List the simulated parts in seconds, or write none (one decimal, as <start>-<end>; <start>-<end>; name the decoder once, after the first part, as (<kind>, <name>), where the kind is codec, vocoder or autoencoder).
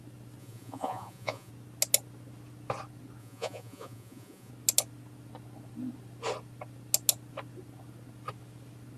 0.4-1.5 (vocoder, Vocos); 3.2-4.5